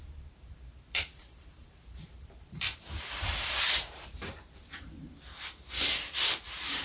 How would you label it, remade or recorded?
remade